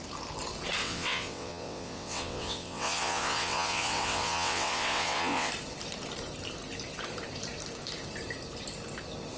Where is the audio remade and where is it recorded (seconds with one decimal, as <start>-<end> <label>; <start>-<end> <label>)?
0.0-0.8 recorded; 0.8-5.5 remade; 5.5-9.4 recorded